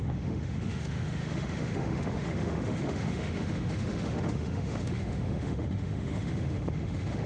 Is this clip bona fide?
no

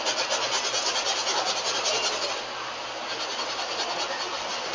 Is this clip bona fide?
yes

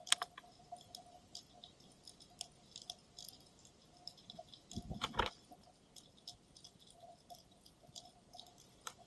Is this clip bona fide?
yes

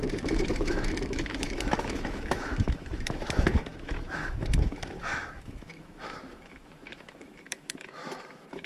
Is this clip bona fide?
no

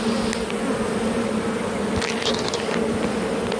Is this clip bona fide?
yes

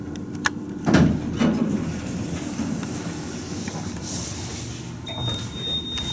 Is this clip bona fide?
yes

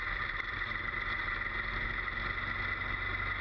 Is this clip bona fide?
yes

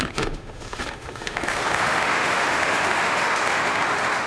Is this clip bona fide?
no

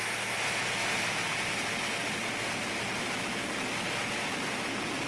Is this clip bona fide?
yes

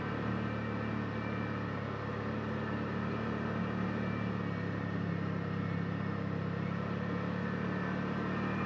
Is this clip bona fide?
yes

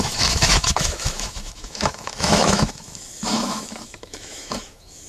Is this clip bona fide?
no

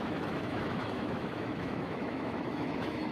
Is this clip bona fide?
no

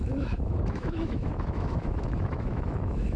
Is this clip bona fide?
no